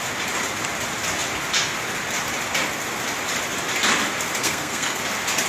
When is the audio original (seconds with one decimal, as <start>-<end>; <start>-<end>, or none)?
0.0-4.4; 5.0-5.5